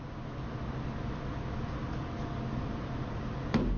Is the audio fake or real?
real